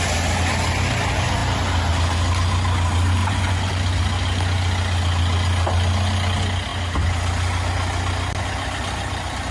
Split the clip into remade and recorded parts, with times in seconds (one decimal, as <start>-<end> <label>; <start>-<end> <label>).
0.0-3.2 recorded; 3.2-3.7 remade; 3.7-9.5 recorded